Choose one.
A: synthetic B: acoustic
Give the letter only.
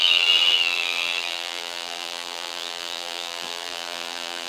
A